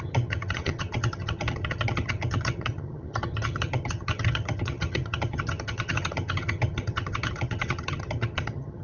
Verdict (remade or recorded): remade